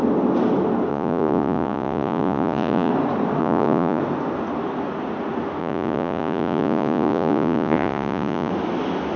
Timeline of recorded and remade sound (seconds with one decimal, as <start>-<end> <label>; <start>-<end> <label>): 0.0-0.9 recorded; 0.9-2.9 remade; 2.9-3.4 recorded; 3.4-4.0 remade; 4.0-5.6 recorded; 5.6-8.5 remade; 8.5-9.2 recorded